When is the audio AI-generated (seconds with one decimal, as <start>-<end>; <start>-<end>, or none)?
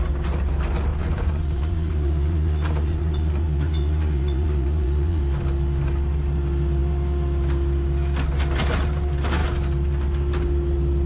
0.9-5.2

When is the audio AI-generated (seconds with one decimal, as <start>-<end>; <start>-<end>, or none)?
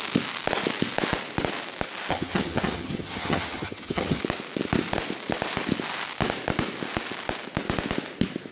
2.1-4.2